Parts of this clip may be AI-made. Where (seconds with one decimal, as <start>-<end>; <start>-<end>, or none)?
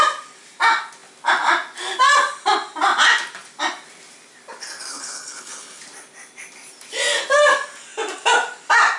4.9-5.8